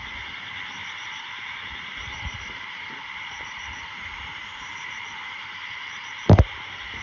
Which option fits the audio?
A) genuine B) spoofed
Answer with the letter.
B